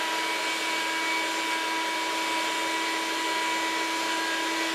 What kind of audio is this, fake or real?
real